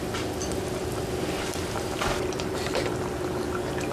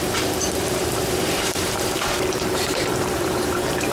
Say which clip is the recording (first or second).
first